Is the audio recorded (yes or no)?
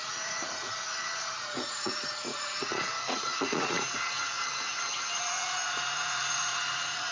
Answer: no